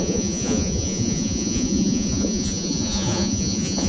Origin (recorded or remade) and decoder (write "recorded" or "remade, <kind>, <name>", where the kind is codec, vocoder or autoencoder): remade, vocoder, Vocos